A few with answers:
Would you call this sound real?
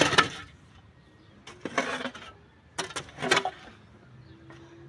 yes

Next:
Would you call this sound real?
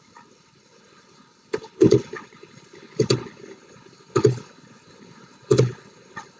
no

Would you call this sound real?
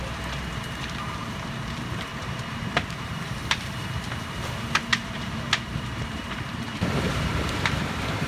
no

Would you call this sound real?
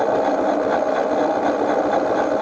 no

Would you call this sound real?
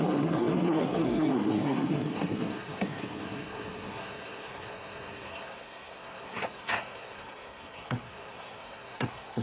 no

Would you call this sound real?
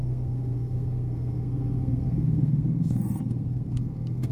no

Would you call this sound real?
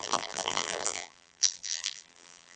no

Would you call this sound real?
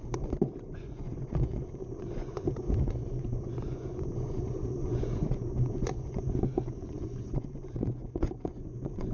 no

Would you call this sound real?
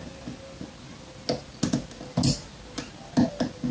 yes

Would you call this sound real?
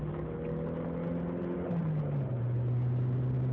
yes